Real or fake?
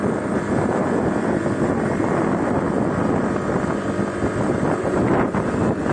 real